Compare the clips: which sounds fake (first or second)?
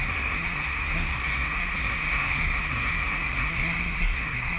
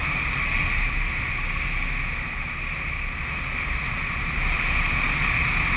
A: first